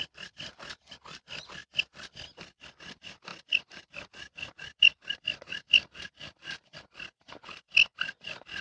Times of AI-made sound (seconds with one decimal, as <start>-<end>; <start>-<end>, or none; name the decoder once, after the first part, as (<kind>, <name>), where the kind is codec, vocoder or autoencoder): none